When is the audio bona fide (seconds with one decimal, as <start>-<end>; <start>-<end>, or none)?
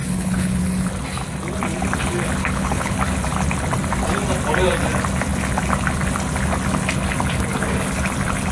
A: 0.6-2.4; 2.9-8.5